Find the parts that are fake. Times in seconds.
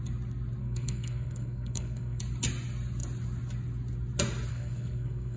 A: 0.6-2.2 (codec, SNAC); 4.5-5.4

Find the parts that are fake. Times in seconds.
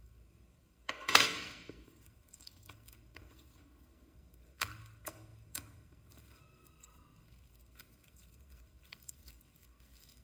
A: 0.0-10.2 (codec, SNAC)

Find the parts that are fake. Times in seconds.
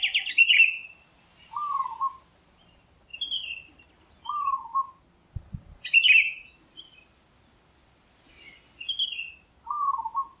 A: none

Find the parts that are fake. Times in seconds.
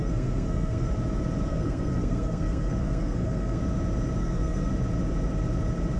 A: 0.0-0.9 (codec, SNAC); 1.5-3.6; 4.2-4.7